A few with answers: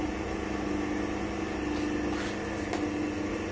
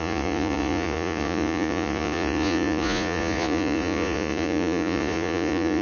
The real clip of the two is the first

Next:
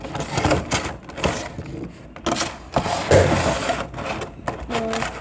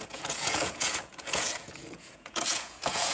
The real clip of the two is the first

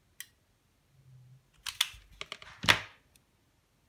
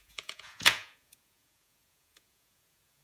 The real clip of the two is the first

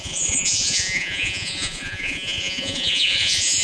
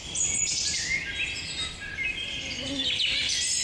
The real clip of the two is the second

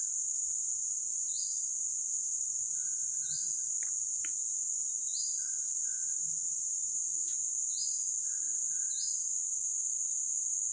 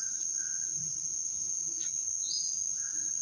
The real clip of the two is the first